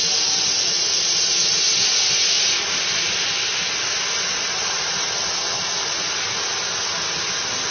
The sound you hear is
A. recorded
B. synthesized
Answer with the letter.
A